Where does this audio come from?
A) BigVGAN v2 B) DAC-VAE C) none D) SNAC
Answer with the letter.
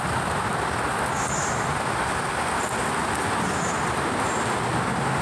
C